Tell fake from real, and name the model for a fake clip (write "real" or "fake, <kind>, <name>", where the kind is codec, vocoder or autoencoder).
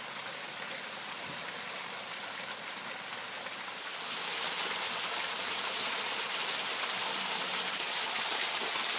real